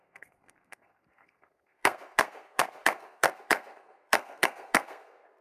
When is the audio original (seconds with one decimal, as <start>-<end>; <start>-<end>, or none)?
none